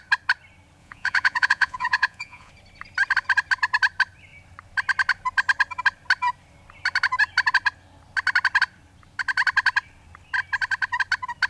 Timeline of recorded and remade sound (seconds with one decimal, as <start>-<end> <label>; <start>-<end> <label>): 0.0-0.8 recorded; 0.8-2.5 remade; 2.5-11.5 recorded